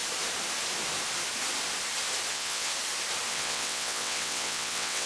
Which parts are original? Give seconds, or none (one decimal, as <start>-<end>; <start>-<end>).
0.0-2.3; 2.7-3.3